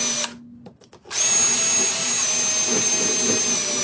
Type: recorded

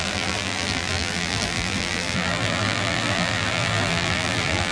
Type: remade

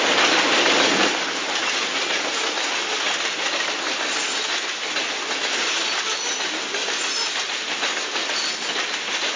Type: recorded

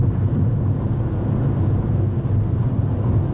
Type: recorded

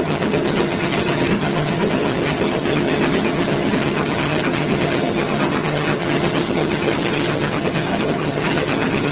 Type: remade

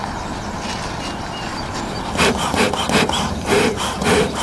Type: recorded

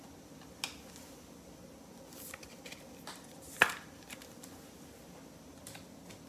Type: recorded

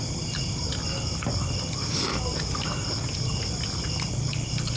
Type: recorded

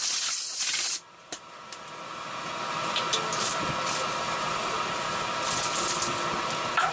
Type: recorded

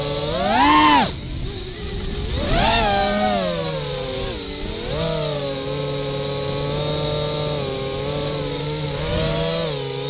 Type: recorded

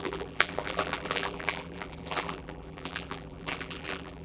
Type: remade